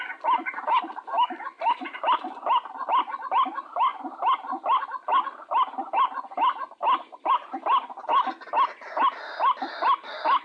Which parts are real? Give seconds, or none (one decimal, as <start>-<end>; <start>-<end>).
0.0-10.4